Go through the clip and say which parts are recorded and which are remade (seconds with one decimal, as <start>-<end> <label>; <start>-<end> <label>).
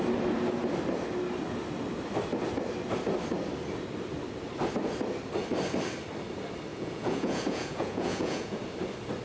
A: 0.0-6.7 recorded; 6.7-8.6 remade; 8.6-9.2 recorded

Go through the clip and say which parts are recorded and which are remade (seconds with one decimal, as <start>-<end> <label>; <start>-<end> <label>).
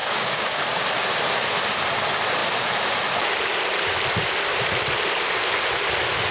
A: 0.0-0.8 remade; 0.8-6.3 recorded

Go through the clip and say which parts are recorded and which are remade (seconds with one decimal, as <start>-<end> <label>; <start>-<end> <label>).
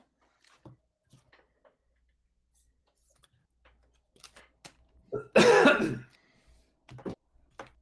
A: 0.0-7.8 recorded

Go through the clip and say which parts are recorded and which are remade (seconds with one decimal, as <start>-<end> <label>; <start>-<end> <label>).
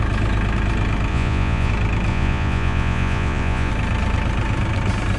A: 0.0-1.1 recorded; 1.1-1.7 remade; 1.7-2.1 recorded; 2.1-3.7 remade; 3.7-5.2 recorded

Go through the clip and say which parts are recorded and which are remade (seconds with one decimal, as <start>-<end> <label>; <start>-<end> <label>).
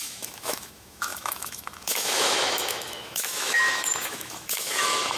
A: 0.0-5.2 remade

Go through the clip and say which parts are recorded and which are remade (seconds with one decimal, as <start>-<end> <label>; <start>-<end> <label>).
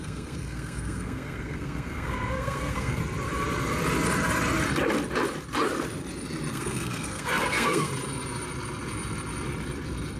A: 0.0-3.0 remade; 3.0-6.5 recorded; 6.5-7.9 remade; 7.9-10.2 recorded